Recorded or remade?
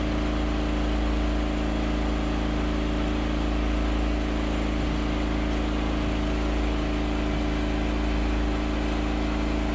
recorded